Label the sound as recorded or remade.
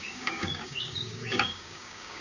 remade